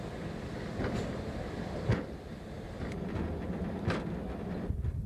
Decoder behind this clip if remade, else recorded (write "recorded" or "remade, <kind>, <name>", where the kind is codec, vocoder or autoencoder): recorded